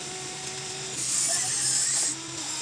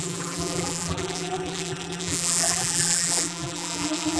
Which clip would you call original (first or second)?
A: first